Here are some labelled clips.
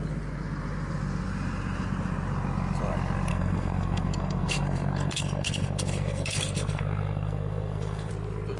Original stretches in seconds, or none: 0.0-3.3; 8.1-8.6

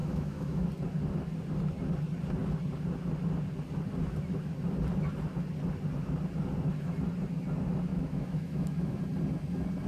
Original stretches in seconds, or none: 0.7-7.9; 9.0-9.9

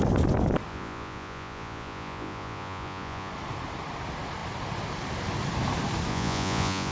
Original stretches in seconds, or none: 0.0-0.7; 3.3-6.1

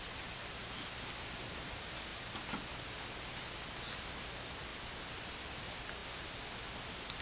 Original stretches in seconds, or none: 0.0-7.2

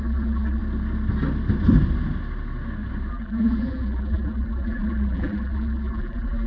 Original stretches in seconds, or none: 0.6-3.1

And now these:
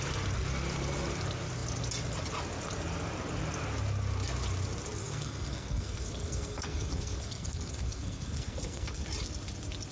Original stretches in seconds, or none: 0.0-5.0; 9.0-9.9